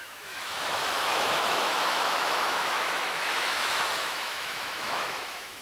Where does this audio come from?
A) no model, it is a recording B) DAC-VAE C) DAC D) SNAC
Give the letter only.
B